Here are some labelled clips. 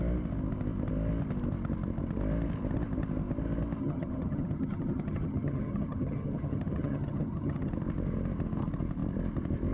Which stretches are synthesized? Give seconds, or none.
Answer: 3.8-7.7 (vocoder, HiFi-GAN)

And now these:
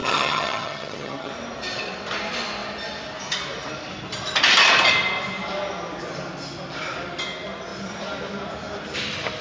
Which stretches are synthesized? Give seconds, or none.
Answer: 0.0-1.3 (vocoder, HiFi-GAN)

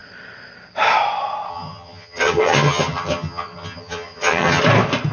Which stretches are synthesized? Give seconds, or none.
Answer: 1.5-4.6 (vocoder, HiFi-GAN)

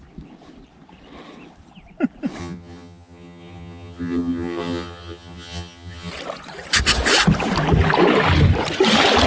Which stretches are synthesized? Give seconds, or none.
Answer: 2.4-6.1 (vocoder, HiFi-GAN)